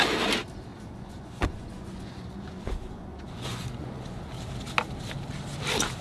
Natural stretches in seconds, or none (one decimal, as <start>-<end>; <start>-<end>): 0.0-0.7; 4.3-6.0